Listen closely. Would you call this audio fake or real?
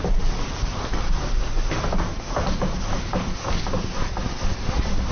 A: real